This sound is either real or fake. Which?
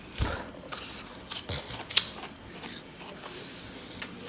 real